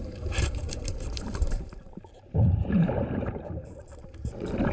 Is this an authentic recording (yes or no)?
no